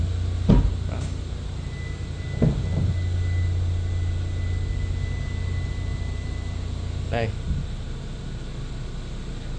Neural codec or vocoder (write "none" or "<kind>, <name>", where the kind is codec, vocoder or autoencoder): none